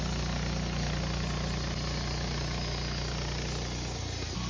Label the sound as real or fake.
real